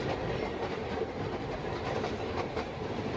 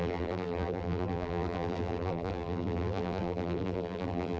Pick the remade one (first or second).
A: second